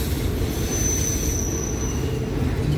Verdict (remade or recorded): recorded